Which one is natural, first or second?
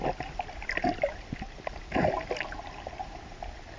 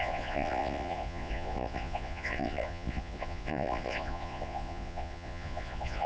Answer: first